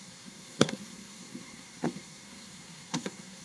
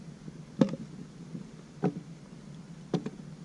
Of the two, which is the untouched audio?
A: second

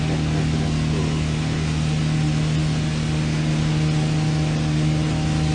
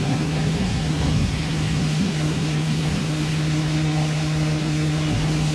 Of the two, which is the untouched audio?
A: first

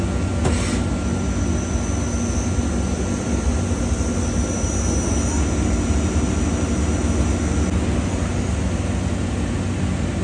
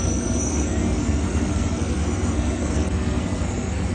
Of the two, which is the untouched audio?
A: first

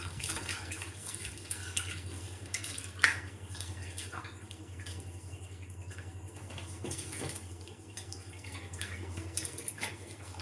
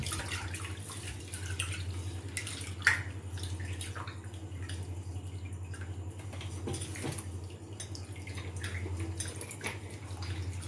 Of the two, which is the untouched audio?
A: second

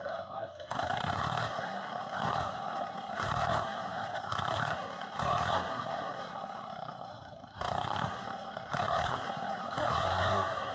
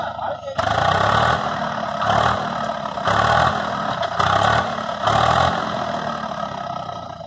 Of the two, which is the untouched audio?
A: second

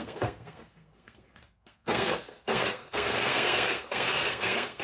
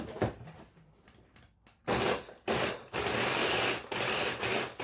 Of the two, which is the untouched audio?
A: second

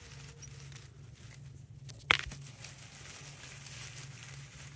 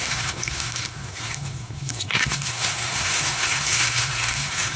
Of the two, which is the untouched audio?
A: first